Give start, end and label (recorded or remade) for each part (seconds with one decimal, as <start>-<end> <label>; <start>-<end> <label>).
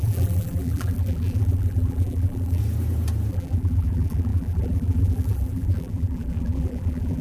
0.0-2.6 remade; 2.6-3.3 recorded; 3.3-7.2 remade